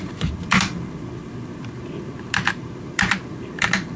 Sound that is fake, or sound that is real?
fake